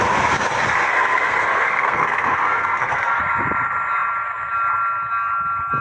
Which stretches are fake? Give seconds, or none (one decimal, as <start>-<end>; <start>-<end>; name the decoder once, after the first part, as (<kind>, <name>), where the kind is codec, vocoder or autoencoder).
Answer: 0.8-3.2 (codec, SNAC)